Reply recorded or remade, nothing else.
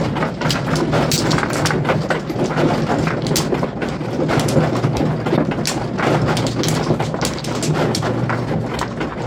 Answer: recorded